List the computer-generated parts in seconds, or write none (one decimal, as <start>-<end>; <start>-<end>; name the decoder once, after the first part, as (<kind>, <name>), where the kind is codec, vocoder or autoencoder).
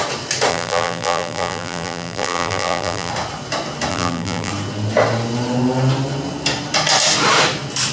0.5-3.1 (vocoder, BigVGAN v2); 3.9-4.5